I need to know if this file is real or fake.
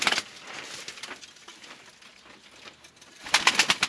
real